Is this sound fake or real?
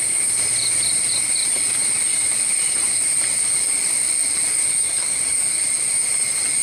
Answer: real